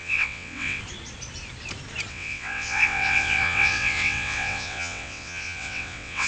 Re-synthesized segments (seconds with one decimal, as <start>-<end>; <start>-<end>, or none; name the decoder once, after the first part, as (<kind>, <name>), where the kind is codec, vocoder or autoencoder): 0.0-0.8 (vocoder, WaveNeXt); 2.1-6.3